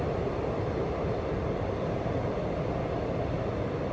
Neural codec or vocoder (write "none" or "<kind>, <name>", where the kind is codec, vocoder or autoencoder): none